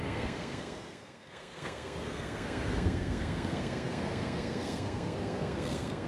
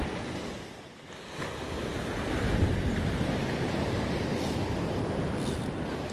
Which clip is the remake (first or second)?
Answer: first